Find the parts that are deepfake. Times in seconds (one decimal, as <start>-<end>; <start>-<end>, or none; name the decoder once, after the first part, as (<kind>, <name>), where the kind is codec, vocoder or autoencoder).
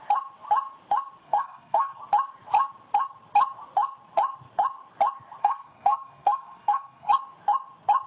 1.2-2.0 (codec, SNAC); 5.4-7.1